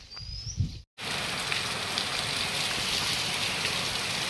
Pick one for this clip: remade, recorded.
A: recorded